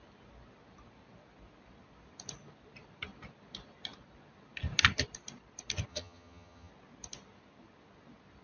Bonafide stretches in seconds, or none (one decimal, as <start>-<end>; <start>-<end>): 0.0-5.9; 6.7-8.4